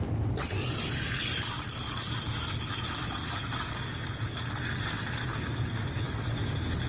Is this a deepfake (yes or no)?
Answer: no